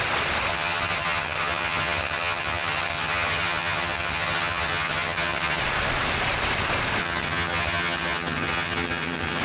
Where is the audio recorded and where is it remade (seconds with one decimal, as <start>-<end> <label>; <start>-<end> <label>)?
0.0-0.5 recorded; 0.5-5.6 remade; 5.6-7.0 recorded; 7.0-9.4 remade